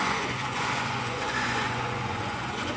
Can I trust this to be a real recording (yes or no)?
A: no